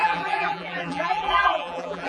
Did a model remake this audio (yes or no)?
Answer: yes